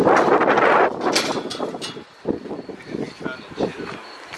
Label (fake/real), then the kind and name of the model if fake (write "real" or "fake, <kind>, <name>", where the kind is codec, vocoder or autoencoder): real